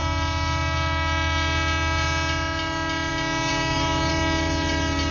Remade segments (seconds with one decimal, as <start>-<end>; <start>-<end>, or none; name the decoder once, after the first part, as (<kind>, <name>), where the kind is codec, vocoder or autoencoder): 3.5-4.1 (codec, DAC)